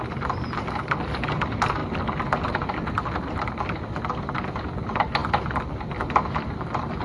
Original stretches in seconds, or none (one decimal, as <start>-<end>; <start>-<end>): 0.0-7.0